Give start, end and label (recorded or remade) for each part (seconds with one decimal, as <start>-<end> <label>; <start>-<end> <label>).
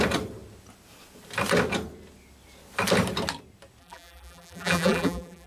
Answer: 0.0-3.8 recorded; 3.8-5.5 remade